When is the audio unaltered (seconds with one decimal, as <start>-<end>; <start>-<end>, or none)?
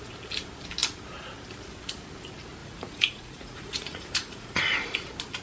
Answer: 0.0-2.6; 4.6-5.4